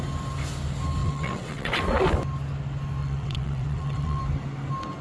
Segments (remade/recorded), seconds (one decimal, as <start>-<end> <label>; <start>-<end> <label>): 0.0-1.0 recorded; 1.0-1.8 remade; 1.8-3.0 recorded; 3.0-4.2 remade; 4.2-5.0 recorded